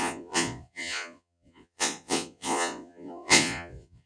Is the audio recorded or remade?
remade